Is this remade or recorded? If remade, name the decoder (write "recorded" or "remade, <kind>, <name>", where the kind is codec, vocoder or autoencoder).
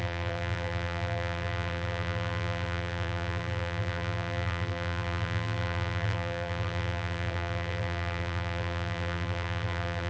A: remade, vocoder, BigVGAN v2